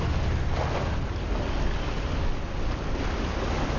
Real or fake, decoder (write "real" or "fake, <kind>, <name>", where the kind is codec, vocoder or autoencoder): real